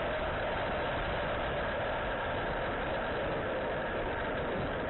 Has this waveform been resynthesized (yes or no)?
no